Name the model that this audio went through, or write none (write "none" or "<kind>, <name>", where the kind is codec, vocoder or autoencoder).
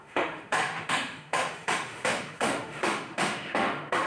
autoencoder, DAC-VAE